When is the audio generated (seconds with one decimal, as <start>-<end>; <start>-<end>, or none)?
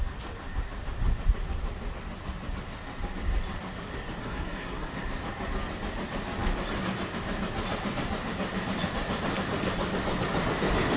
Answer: 4.2-4.9